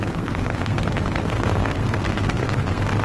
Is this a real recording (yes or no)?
no